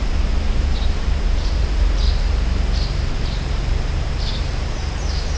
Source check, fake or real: fake